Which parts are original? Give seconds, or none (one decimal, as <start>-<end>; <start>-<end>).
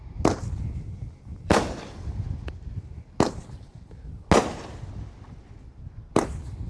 0.0-1.3; 2.7-6.7